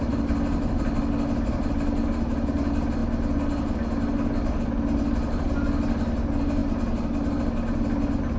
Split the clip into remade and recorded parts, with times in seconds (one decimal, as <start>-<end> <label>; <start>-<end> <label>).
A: 0.0-8.4 recorded